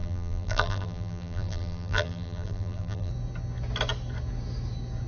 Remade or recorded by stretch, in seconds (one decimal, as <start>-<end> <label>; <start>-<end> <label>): 0.0-3.1 remade; 3.1-5.1 recorded